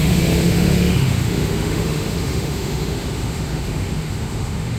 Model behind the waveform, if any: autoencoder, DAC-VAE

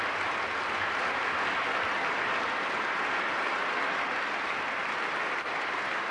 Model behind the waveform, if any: none